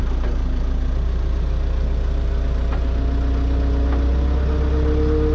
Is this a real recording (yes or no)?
yes